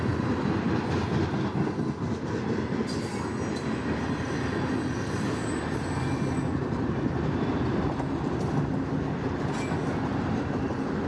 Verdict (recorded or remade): recorded